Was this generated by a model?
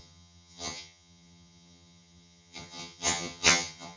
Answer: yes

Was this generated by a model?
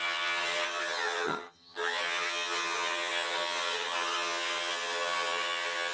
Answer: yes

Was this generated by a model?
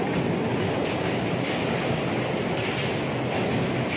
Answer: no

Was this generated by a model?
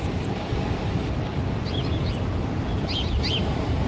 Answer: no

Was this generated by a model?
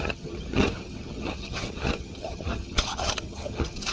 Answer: yes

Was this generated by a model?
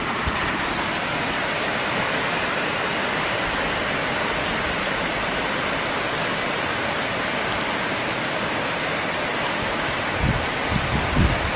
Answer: no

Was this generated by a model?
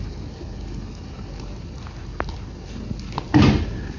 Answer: no